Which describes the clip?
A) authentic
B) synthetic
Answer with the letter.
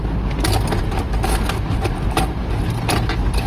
A